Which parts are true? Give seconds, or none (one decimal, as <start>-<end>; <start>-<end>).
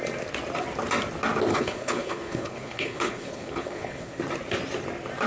0.0-1.5; 4.2-5.3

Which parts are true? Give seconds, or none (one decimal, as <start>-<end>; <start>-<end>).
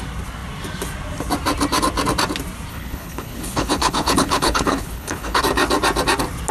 0.0-2.7; 5.4-6.5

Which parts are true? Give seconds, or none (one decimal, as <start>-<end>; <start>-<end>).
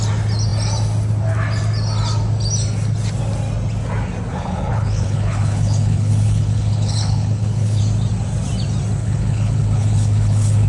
0.0-4.3; 7.8-9.0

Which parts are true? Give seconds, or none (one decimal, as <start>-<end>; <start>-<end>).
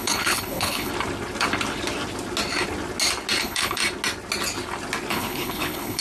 0.9-3.4; 3.8-5.1